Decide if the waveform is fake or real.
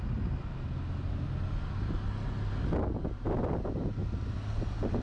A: real